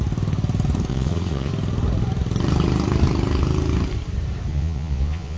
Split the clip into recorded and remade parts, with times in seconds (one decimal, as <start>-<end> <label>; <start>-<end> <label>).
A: 0.0-0.9 recorded; 0.9-1.5 remade; 1.5-4.5 recorded; 4.5-5.4 remade